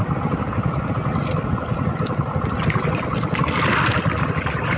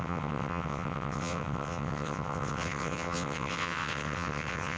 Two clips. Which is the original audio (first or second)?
first